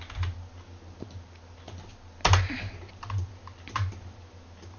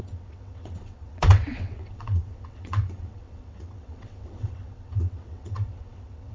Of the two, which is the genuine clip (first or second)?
first